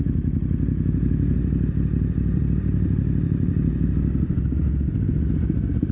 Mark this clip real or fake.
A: real